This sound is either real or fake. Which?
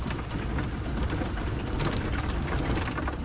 real